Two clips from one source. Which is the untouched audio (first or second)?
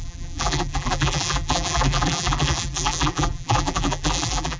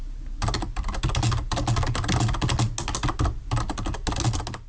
second